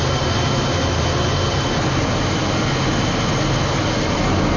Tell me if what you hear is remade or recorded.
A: recorded